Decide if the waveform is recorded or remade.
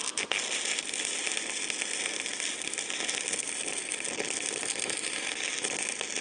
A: recorded